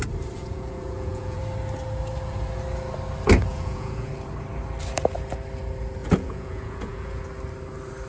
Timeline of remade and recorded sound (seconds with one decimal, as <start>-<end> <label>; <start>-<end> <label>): 0.0-0.4 recorded; 0.4-1.4 remade; 1.4-3.5 recorded; 3.5-4.1 remade; 4.1-6.0 recorded; 6.0-7.2 remade; 7.2-8.1 recorded